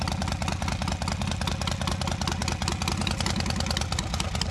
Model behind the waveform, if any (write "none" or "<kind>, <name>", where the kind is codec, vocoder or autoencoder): none